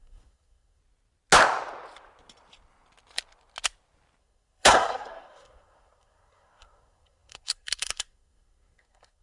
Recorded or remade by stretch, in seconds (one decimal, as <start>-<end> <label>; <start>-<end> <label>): 0.0-0.8 remade; 0.8-4.2 recorded; 4.2-9.2 remade